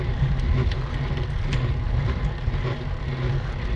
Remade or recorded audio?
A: recorded